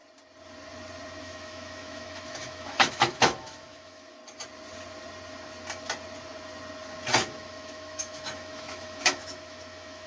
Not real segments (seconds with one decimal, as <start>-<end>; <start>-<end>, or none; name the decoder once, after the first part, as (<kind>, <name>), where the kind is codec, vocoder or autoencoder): 1.2-4.2 (autoencoder, DAC-VAE); 7.2-10.1